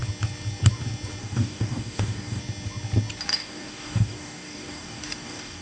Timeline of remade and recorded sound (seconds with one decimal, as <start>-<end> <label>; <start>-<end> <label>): 0.0-1.2 recorded; 1.2-2.4 remade; 2.4-3.3 recorded; 3.3-5.6 remade